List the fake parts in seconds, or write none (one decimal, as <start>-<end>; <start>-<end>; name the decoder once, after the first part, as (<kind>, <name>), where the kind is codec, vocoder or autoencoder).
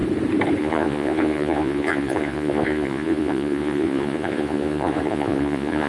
0.6-5.9 (vocoder, Vocos)